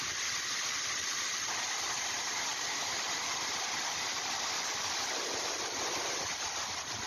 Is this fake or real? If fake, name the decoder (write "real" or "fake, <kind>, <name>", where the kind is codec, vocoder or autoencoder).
fake, vocoder, BigVGAN v2